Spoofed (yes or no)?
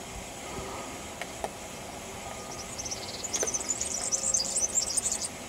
no